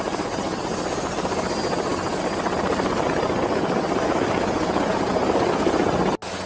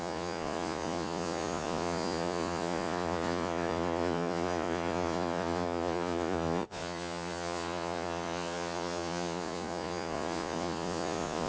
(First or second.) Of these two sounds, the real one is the first